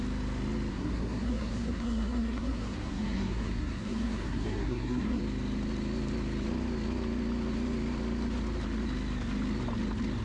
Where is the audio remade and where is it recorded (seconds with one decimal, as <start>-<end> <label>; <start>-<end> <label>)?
0.0-0.7 recorded; 0.7-5.2 remade; 5.2-10.2 recorded